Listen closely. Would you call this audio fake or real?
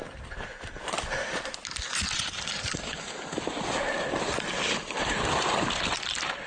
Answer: real